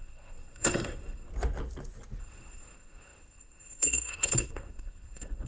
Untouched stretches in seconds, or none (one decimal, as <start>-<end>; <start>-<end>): 1.3-2.2